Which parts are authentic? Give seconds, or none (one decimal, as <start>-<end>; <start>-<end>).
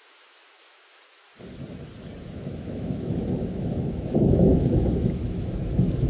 1.3-2.2